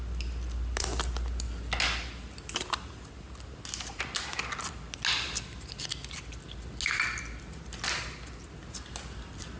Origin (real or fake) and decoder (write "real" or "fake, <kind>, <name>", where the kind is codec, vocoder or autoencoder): real